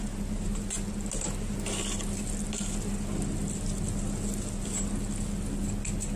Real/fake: real